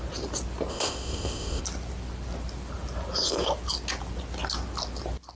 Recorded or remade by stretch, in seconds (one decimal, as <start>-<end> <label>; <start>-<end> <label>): 0.0-0.7 recorded; 0.7-1.6 remade; 1.6-5.3 recorded